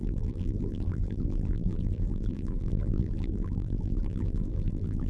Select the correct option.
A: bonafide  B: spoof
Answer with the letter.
B